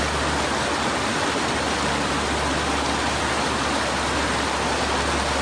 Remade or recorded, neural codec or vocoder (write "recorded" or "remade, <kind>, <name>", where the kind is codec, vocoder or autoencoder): recorded